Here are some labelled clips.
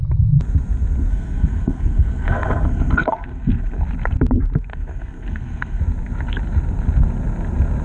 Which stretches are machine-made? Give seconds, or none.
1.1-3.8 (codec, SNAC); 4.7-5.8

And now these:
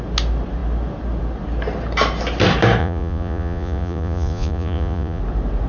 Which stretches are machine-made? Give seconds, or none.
2.8-5.2 (vocoder, Vocos)

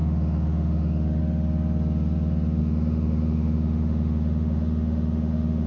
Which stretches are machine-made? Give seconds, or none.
0.0-1.2 (autoencoder, DAC-VAE); 2.6-5.7

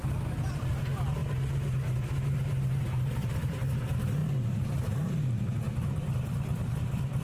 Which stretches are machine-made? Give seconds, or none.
0.0-1.2 (vocoder, BigVGAN v2); 3.3-7.2